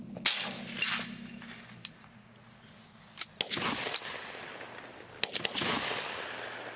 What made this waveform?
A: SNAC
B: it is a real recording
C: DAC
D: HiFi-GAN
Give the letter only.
B